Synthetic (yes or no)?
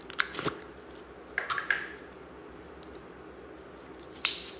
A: no